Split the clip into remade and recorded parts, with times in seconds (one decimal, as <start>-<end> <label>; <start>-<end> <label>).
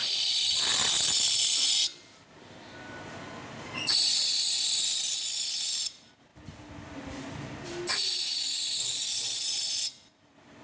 0.0-10.6 recorded